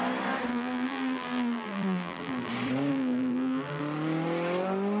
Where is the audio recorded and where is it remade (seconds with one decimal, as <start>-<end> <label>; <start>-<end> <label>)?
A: 0.0-0.5 recorded; 0.5-2.5 remade; 2.5-2.9 recorded; 2.9-3.8 remade; 3.8-5.0 recorded